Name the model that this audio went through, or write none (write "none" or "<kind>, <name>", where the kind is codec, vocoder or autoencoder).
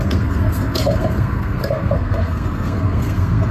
codec, SNAC